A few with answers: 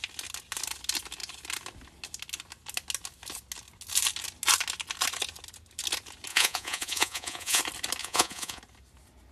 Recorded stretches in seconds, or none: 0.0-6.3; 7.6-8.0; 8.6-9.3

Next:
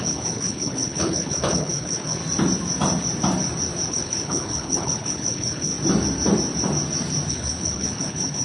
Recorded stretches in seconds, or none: 2.2-3.9; 5.7-7.3

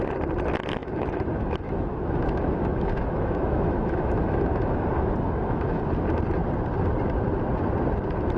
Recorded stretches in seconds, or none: 0.0-0.8; 5.8-8.4

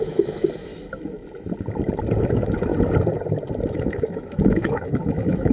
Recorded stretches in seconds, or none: 0.7-2.2; 2.7-3.7

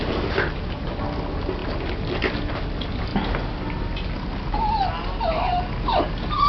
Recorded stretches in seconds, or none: 0.0-6.5